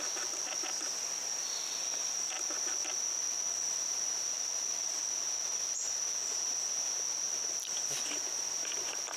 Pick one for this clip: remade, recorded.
recorded